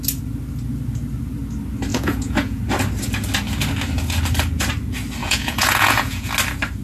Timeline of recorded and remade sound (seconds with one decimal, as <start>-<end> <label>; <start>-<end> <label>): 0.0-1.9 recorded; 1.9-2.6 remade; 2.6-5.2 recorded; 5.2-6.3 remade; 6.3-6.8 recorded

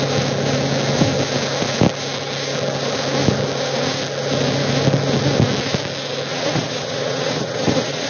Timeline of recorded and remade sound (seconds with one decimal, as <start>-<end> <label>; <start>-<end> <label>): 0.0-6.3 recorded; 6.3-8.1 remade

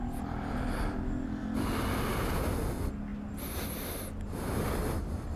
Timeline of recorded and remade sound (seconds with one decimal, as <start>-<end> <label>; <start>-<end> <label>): 0.0-5.4 recorded

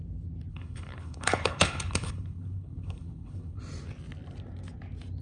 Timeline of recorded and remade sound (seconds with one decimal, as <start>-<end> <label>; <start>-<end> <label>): 0.0-0.5 recorded; 0.5-3.6 remade; 3.6-5.2 recorded